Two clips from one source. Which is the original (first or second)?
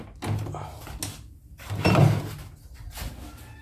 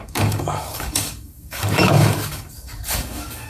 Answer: first